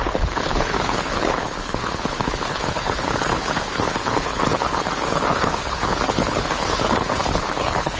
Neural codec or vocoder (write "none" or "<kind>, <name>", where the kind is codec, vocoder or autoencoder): codec, HILCodec